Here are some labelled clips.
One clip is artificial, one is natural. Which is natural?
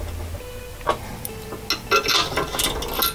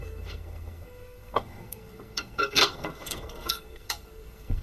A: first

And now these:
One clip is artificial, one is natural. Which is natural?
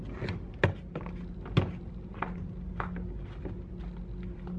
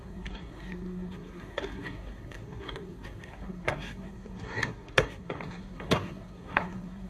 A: first